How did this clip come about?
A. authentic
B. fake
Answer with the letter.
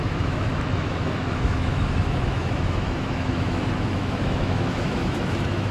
B